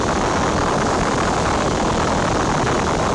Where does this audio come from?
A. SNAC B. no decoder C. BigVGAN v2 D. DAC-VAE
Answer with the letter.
B